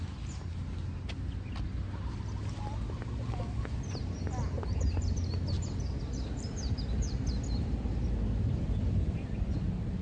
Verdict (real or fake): real